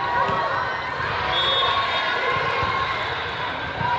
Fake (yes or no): no